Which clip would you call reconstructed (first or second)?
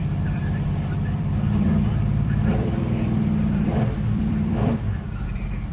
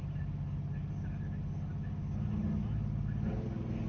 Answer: first